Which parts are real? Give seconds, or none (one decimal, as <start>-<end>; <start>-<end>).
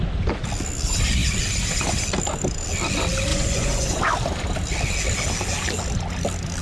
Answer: 0.0-3.3; 4.0-6.6